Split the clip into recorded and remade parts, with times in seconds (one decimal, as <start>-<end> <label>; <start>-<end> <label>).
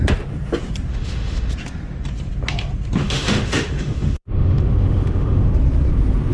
0.0-0.9 recorded; 0.9-1.5 remade; 1.5-3.0 recorded; 3.0-5.5 remade; 5.5-6.3 recorded